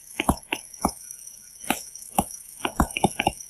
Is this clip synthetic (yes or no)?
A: yes